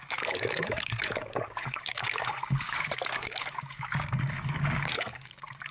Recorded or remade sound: remade